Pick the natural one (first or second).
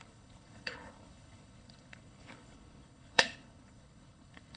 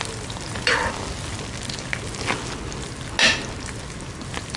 second